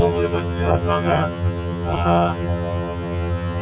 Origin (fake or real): fake